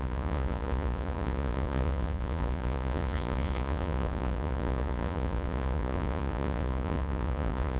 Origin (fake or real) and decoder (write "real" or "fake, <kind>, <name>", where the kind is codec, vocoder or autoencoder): fake, vocoder, Vocos